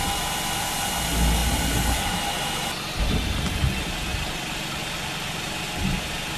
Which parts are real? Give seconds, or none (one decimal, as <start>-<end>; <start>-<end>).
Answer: 0.0-6.4